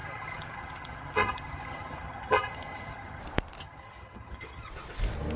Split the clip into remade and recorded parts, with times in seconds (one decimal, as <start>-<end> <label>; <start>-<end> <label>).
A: 0.0-3.2 remade; 3.2-3.6 recorded; 3.6-4.7 remade; 4.7-5.4 recorded